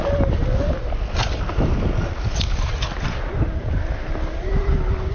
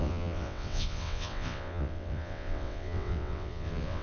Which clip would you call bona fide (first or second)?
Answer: first